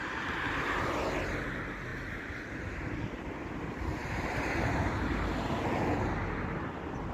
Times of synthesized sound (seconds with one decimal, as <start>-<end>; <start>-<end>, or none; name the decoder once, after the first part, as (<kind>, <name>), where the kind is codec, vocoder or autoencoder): 4.0-5.5 (vocoder, BigVGAN v2)